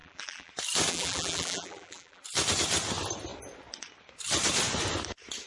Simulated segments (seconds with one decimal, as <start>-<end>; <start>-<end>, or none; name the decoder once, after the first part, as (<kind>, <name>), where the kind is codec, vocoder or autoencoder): 0.0-0.5 (vocoder, BigVGAN v2); 0.9-2.2